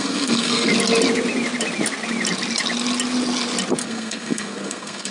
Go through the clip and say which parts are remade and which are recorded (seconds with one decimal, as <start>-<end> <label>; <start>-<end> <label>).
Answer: 0.0-0.7 remade; 0.7-3.8 recorded; 3.8-5.1 remade